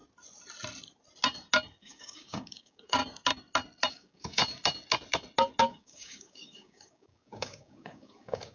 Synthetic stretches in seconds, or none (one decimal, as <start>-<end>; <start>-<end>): 1.8-3.0; 3.9-4.4; 5.6-8.5